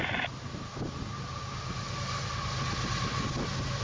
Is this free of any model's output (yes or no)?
yes